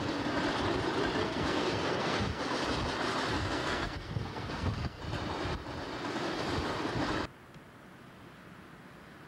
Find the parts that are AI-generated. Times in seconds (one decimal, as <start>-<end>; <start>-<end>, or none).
1.2-2.4; 3.3-5.0